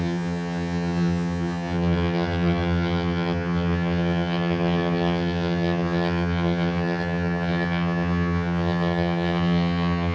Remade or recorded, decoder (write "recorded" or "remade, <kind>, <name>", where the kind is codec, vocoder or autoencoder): remade, vocoder, HiFi-GAN